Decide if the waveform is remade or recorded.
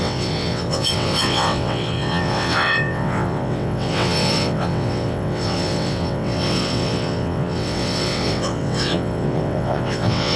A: remade